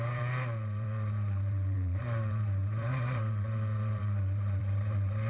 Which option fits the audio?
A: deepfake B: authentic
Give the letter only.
A